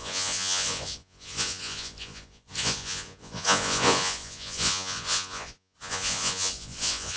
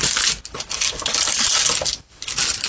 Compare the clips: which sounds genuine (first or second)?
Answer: second